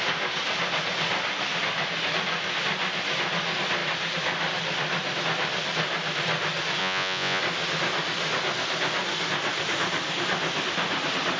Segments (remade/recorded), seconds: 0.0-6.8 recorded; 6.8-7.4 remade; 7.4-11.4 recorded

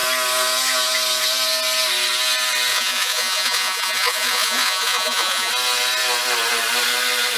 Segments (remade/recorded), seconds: 0.0-2.7 recorded; 2.7-5.5 remade; 5.5-7.4 recorded

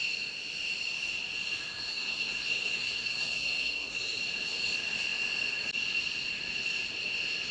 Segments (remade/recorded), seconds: 0.0-1.9 recorded; 1.9-4.2 remade; 4.2-7.5 recorded

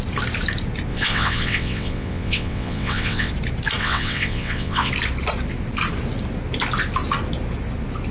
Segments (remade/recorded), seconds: 0.0-0.9 recorded; 0.9-3.3 remade; 3.3-3.8 recorded; 3.8-4.9 remade; 4.9-8.1 recorded